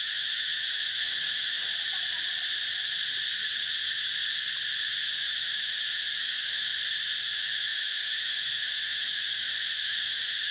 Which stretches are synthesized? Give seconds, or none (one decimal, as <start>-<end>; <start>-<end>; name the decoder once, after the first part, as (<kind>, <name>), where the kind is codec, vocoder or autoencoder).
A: 0.0-1.7 (autoencoder, DAC-VAE); 5.2-6.7; 7.2-10.5